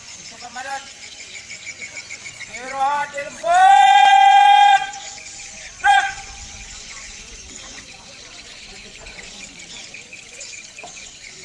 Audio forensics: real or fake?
fake